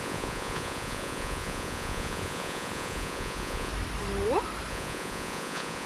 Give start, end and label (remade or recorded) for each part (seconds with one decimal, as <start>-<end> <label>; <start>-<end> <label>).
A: 0.0-3.7 remade; 3.7-4.7 recorded; 4.7-5.9 remade